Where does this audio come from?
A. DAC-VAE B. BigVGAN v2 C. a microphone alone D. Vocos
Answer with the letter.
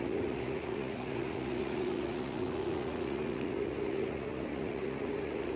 D